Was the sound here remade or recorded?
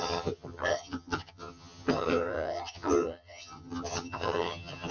remade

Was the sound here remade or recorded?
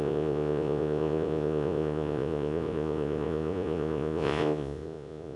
remade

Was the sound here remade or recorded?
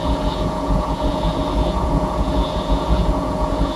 remade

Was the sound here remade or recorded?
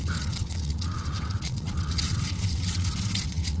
remade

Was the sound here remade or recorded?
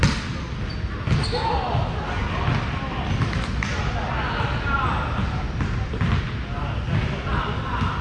recorded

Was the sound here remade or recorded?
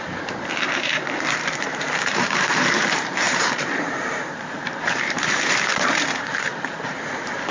remade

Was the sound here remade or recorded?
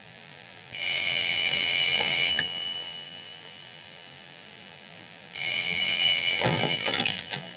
remade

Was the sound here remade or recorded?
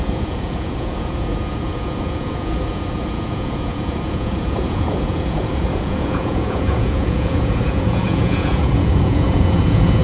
remade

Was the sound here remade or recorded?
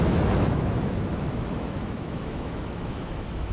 remade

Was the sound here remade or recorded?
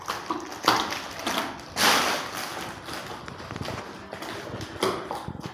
recorded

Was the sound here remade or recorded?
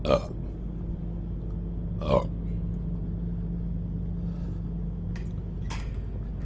recorded